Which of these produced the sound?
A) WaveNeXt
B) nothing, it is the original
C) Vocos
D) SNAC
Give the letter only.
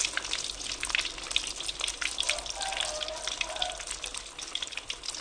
B